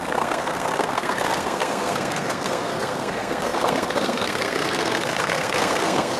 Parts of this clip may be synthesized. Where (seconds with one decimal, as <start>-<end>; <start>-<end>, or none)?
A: 0.0-6.2